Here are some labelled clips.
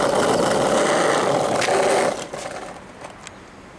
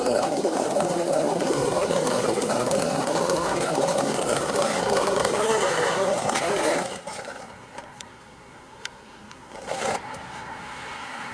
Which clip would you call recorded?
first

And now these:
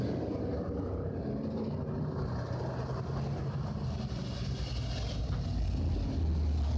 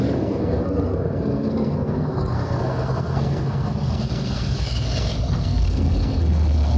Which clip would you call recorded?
first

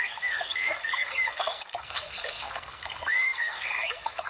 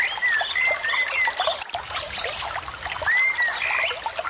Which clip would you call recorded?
second